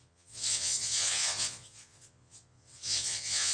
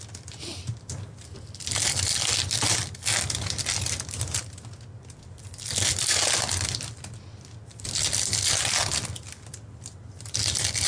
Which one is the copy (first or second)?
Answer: first